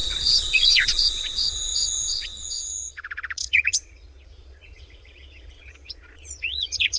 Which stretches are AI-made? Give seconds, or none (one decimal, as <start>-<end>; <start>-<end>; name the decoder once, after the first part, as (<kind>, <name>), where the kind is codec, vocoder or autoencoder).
0.0-7.0 (vocoder, Vocos)